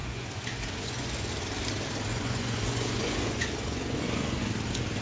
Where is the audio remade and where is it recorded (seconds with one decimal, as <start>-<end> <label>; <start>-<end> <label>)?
0.0-1.3 remade; 1.3-2.1 recorded; 2.1-4.5 remade; 4.5-5.0 recorded

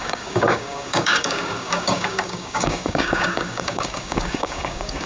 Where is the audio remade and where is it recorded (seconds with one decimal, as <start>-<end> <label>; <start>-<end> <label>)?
0.0-5.1 remade

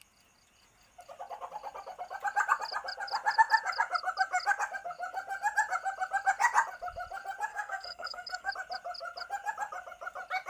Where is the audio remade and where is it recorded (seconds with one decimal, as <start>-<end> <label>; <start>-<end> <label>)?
0.0-7.5 recorded; 7.5-8.5 remade; 8.5-10.5 recorded

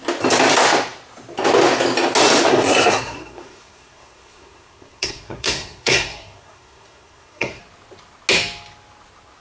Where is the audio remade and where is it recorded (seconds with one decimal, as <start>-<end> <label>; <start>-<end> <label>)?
0.0-2.5 recorded; 2.5-7.6 remade; 7.6-9.4 recorded

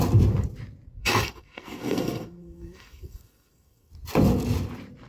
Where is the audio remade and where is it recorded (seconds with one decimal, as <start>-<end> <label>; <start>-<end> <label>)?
0.0-1.0 recorded; 1.0-3.9 remade; 3.9-5.1 recorded

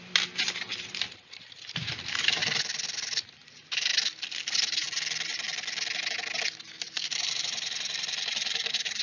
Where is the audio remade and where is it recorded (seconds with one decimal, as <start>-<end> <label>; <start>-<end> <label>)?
0.0-2.4 remade; 2.4-3.2 recorded; 3.2-3.9 remade; 3.9-6.8 recorded; 6.8-9.0 remade

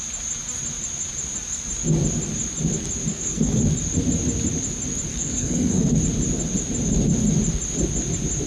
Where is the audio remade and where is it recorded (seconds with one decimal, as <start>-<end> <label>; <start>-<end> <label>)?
0.0-3.1 recorded; 3.1-3.6 remade; 3.6-5.1 recorded; 5.1-5.9 remade; 5.9-8.5 recorded

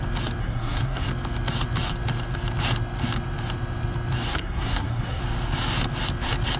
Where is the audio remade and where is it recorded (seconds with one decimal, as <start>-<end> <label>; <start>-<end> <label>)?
0.0-0.4 recorded; 0.4-1.1 remade; 1.1-4.3 recorded; 4.3-5.2 remade; 5.2-6.6 recorded